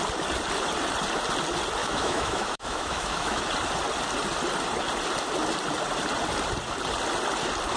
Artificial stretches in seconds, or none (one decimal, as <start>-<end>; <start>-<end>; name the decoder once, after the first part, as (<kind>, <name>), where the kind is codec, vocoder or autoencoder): 1.8-3.4 (autoencoder, DAC-VAE)